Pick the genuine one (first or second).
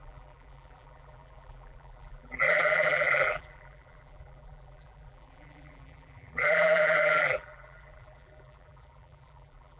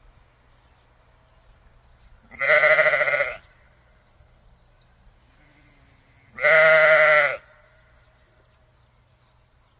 second